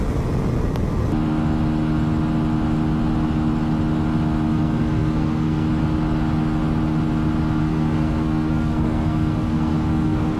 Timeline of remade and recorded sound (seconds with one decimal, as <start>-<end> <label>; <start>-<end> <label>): 0.0-4.5 recorded; 4.5-5.7 remade; 5.7-7.6 recorded; 7.6-10.4 remade